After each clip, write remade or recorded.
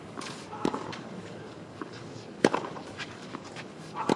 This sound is remade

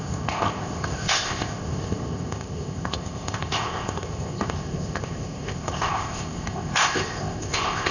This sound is remade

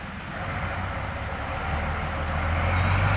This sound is recorded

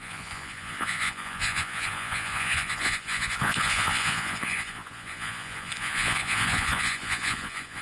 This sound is remade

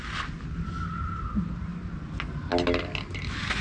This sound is recorded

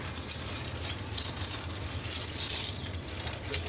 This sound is recorded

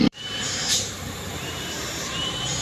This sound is remade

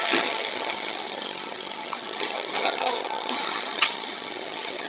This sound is remade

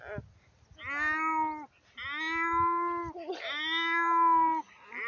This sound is recorded